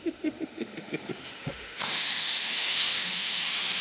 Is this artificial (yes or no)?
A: yes